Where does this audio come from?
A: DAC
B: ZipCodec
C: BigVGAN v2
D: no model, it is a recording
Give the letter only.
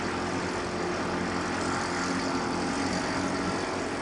D